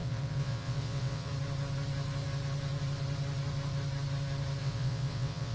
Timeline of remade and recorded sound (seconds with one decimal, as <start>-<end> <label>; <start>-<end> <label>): 0.0-1.3 remade; 1.3-4.6 recorded; 4.6-5.5 remade